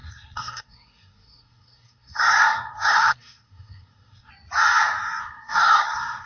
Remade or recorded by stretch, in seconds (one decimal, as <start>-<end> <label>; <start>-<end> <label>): 0.0-4.3 remade; 4.3-5.2 recorded; 5.2-6.3 remade